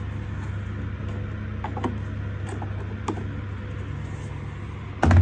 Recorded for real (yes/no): yes